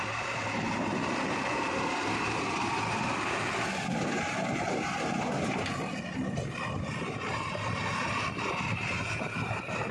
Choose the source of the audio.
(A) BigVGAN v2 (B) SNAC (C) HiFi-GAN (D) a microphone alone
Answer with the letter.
A